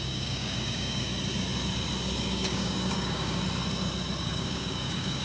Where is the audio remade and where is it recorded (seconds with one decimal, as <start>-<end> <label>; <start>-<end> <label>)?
0.0-1.1 remade; 1.1-2.2 recorded; 2.2-3.4 remade; 3.4-4.2 recorded; 4.2-5.2 remade